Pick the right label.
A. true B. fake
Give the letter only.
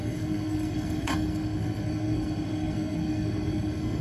B